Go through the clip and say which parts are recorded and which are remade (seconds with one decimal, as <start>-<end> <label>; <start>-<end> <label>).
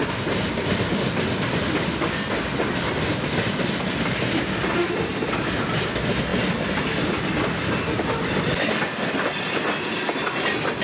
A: 0.0-5.1 recorded; 5.1-5.7 remade; 5.7-10.8 recorded